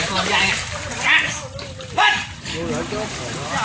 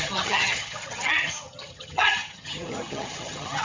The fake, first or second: second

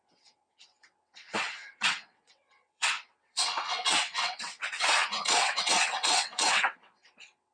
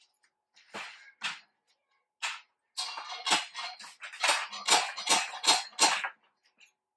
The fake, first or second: first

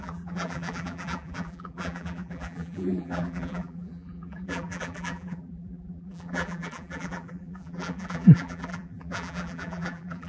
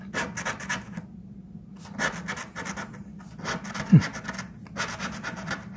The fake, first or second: first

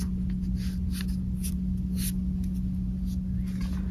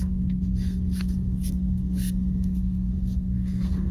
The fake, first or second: second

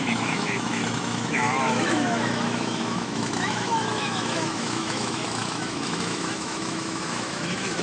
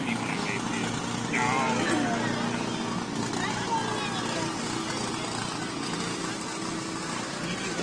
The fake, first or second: first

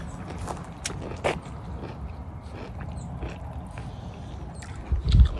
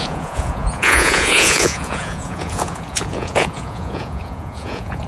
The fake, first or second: second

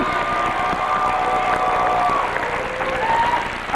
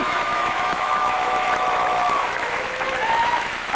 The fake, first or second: second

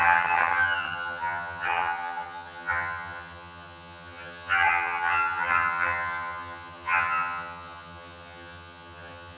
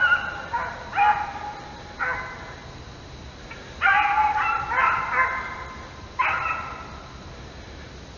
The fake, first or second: first